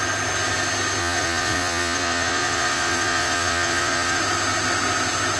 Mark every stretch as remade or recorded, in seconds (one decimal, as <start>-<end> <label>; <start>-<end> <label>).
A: 0.0-1.0 recorded; 1.0-4.2 remade; 4.2-5.4 recorded